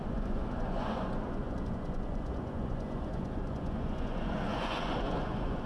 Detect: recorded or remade remade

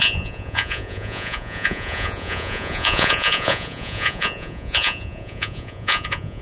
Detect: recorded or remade remade